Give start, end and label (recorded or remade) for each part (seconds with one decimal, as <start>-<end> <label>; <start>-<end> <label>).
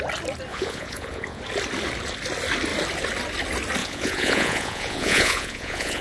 0.0-0.5 recorded; 0.5-1.4 remade; 1.4-3.8 recorded; 3.8-6.0 remade